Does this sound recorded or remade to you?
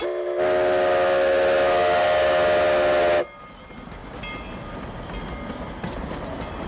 recorded